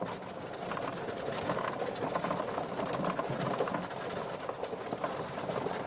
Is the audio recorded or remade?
recorded